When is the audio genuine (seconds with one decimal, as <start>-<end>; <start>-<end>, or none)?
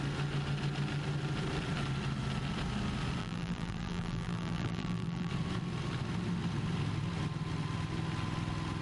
0.0-3.2; 5.3-8.8